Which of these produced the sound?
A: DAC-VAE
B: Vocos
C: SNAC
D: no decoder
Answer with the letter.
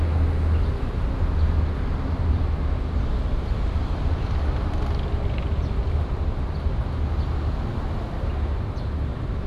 D